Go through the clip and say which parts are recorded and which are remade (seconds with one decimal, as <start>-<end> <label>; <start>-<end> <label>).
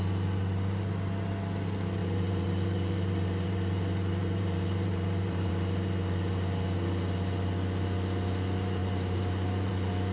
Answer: 0.0-2.0 recorded; 2.0-5.5 remade; 5.5-8.8 recorded; 8.8-9.7 remade; 9.7-10.1 recorded